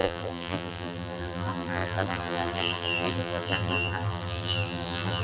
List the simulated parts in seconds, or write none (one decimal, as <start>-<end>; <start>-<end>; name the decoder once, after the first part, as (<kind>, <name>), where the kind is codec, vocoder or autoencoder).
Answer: 0.0-5.2 (vocoder, BigVGAN v2)